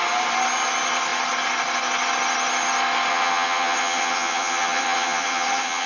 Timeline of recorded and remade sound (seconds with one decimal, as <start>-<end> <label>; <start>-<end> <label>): 0.0-3.1 recorded; 3.1-5.9 remade